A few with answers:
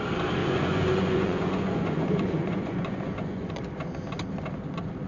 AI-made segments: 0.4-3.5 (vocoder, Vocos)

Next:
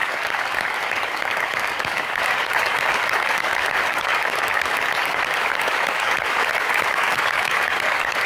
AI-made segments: 0.0-8.3 (codec, DAC)